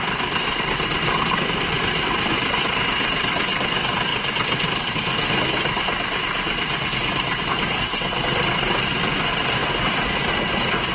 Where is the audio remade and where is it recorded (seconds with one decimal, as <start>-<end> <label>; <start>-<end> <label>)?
0.0-4.1 remade; 4.1-7.4 recorded; 7.4-9.6 remade; 9.6-10.3 recorded; 10.3-10.9 remade